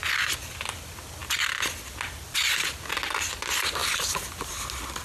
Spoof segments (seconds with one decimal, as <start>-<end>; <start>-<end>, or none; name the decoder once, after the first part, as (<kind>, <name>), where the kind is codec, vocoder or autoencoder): none